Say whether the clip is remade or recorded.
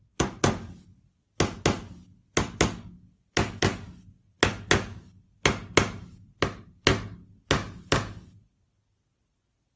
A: recorded